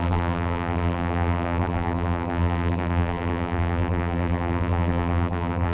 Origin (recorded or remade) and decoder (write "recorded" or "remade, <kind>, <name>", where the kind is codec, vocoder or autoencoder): remade, vocoder, BigVGAN v2